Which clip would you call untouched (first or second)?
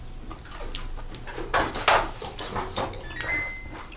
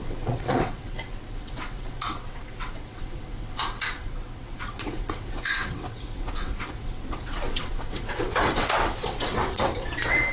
first